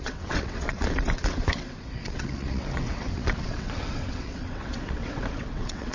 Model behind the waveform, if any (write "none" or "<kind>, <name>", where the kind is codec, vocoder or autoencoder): vocoder, WaveNeXt